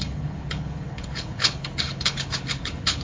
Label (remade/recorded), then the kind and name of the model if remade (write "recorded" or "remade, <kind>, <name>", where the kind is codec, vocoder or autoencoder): remade, codec, HILCodec